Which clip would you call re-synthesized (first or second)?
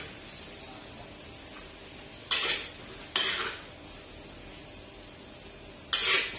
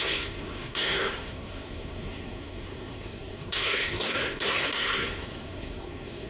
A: second